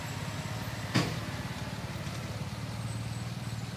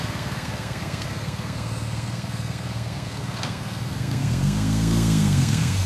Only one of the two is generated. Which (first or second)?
second